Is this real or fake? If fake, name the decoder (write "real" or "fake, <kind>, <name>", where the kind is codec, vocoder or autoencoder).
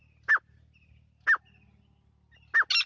real